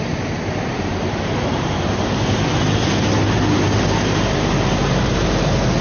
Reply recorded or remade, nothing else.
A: remade